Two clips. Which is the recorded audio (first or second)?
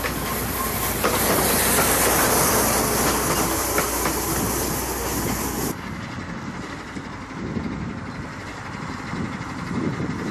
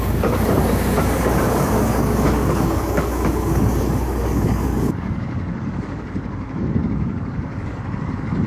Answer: first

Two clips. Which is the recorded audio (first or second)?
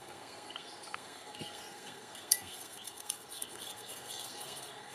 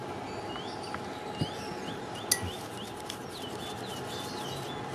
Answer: second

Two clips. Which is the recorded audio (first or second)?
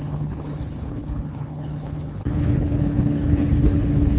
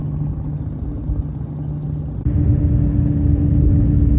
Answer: second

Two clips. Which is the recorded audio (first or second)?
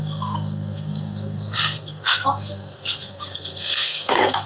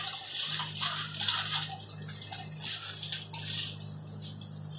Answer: second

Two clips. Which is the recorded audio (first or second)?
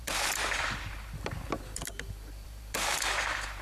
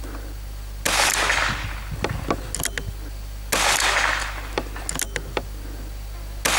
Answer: second